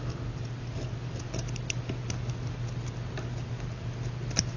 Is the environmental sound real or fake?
real